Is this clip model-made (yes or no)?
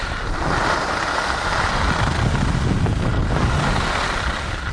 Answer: no